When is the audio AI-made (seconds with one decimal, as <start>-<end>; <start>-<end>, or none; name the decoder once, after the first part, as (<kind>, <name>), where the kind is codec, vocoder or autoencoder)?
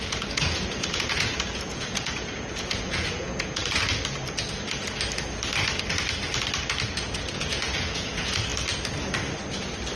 0.0-3.6 (vocoder, Vocos); 6.9-8.5